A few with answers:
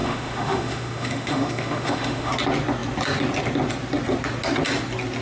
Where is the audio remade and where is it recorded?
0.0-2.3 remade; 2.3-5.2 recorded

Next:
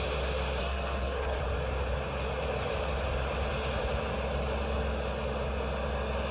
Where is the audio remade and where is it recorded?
0.0-0.6 recorded; 0.6-1.4 remade; 1.4-6.3 recorded

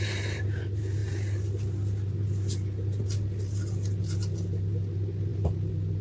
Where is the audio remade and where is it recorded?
0.0-6.0 recorded

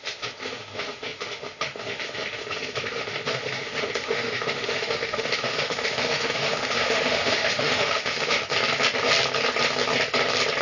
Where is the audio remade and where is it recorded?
0.0-8.4 remade; 8.4-10.6 recorded

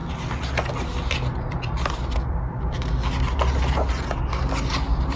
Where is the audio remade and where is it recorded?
0.0-5.2 recorded

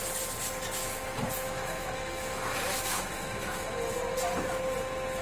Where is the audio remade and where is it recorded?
0.0-0.8 recorded; 0.8-3.9 remade; 3.9-5.2 recorded

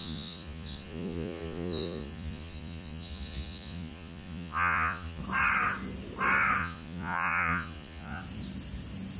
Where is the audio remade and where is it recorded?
0.0-5.2 remade; 5.2-6.6 recorded; 6.6-8.2 remade; 8.2-9.2 recorded